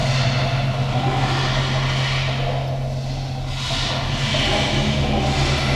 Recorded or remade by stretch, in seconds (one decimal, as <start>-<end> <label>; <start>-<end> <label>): 0.0-5.8 recorded